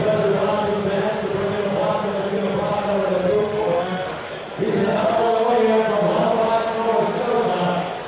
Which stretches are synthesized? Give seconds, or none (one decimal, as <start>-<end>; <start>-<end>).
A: 3.2-4.3; 4.8-5.5